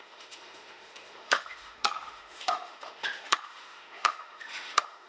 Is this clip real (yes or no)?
no